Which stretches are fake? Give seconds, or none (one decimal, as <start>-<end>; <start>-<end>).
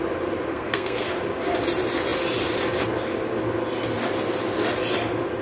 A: 0.5-1.1